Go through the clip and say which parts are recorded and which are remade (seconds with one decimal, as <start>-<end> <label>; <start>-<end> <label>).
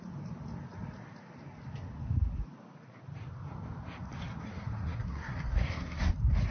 0.0-4.3 recorded; 4.3-6.1 remade; 6.1-6.5 recorded